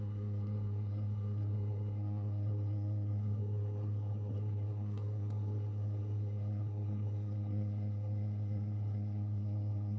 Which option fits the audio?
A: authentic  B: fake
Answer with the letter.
B